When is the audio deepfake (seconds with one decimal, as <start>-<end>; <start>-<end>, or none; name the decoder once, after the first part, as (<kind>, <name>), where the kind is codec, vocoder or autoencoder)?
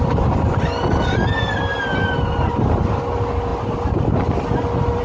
none